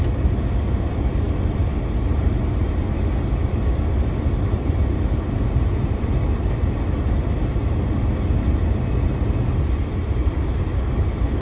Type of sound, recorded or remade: recorded